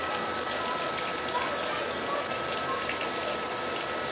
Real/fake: real